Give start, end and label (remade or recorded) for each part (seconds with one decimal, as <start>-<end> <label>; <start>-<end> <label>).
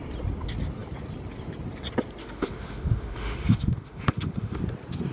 0.0-2.2 recorded; 2.2-4.6 remade; 4.6-5.1 recorded